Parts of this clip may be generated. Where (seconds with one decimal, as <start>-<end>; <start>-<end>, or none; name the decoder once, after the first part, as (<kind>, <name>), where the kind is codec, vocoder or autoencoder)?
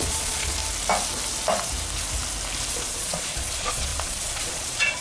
0.0-0.6 (vocoder, Vocos); 2.7-5.0